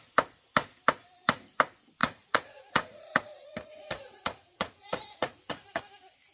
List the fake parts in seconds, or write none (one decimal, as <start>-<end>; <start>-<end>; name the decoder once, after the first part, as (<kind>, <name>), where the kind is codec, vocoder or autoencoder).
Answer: 2.0-5.8 (vocoder, Vocos)